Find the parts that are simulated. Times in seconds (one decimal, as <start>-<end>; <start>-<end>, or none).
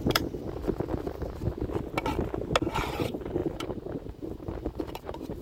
0.0-0.6; 2.7-5.4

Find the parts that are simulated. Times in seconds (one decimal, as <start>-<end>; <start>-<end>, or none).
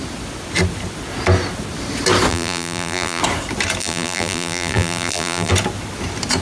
2.3-3.2; 3.8-5.5